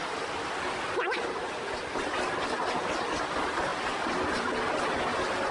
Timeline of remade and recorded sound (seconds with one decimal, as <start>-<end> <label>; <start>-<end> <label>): 0.0-5.5 recorded